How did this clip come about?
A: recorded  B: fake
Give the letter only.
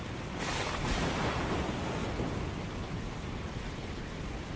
A